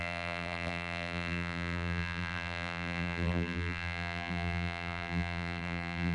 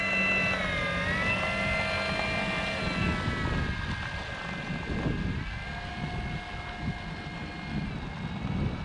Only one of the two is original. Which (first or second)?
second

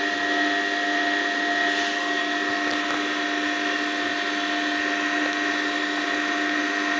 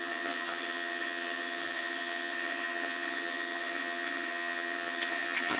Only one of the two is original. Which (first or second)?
first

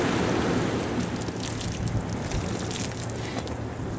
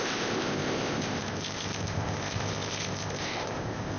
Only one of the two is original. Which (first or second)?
first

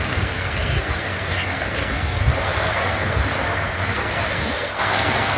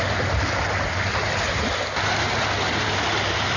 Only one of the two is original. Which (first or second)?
second